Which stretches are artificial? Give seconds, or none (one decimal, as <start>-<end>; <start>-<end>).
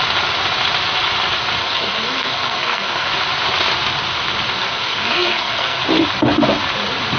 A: 1.6-3.1; 4.6-5.8